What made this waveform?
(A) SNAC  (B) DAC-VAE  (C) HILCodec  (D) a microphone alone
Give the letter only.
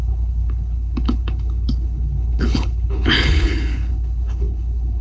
C